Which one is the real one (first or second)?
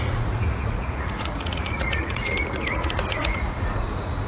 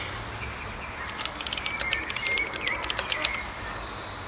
second